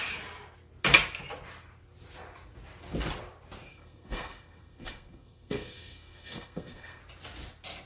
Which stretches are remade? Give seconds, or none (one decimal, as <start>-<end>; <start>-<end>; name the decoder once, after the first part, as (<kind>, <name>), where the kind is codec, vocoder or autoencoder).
3.7-7.0 (codec, SNAC)